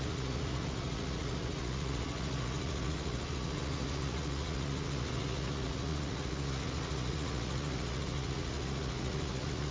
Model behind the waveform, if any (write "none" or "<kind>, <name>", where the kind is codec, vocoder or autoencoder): vocoder, Vocos